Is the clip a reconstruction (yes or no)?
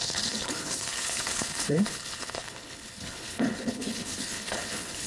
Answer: yes